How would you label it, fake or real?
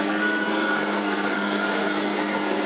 fake